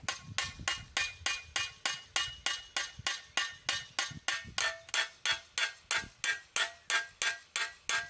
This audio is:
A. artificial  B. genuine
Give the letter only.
B